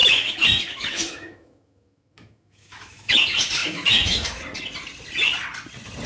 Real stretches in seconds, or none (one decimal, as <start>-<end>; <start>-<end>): 3.1-3.6; 4.4-6.1